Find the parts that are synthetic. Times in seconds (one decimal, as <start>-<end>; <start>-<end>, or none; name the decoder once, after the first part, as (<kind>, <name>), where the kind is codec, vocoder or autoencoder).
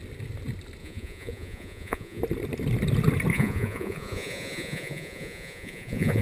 0.8-2.2 (vocoder, Vocos); 3.3-6.2